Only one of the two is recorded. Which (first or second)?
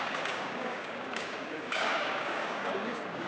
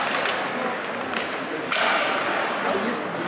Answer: second